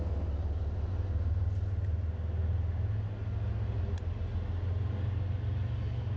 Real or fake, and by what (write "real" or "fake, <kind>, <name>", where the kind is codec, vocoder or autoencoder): real